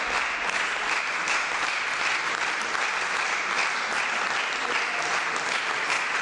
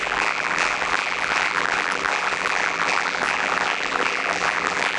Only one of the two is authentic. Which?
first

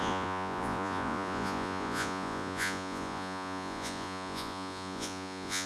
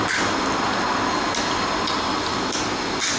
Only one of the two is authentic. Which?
second